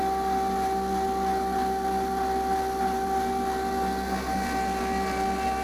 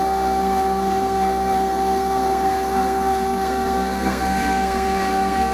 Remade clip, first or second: second